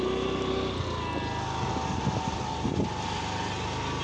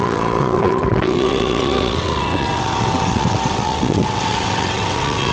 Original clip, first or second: first